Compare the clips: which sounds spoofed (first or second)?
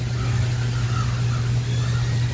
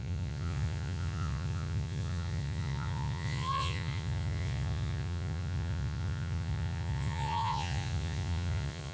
second